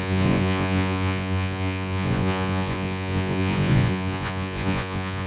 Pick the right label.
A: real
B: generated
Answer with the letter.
B